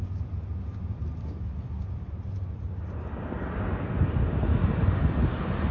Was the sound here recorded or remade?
recorded